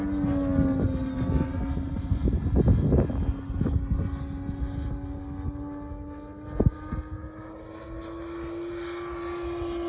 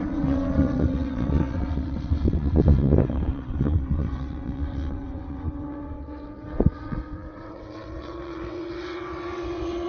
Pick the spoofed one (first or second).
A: second